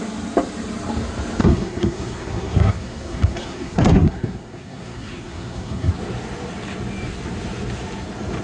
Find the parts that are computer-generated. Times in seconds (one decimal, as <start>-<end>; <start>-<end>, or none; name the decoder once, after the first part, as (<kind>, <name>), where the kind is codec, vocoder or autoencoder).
1.4-5.9 (codec, SNAC)